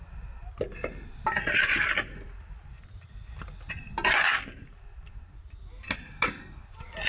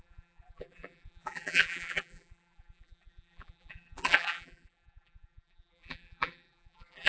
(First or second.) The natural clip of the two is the first